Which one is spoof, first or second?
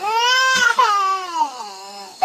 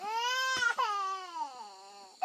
first